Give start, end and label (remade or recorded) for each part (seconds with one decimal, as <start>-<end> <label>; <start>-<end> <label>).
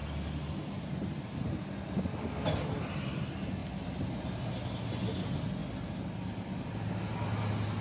0.0-7.8 recorded